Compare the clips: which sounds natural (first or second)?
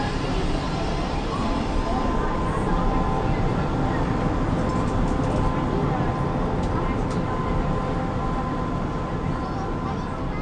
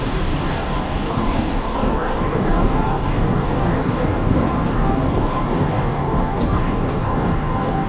first